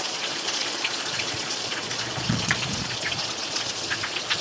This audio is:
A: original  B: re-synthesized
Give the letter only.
B